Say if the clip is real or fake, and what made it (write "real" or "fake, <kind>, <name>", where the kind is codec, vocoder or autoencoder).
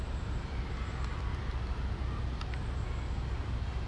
real